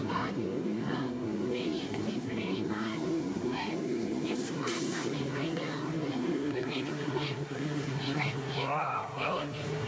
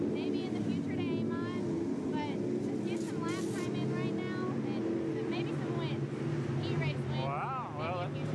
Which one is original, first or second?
second